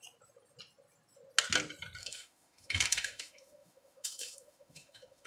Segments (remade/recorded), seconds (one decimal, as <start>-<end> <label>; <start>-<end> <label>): 0.0-2.0 recorded; 2.0-5.3 remade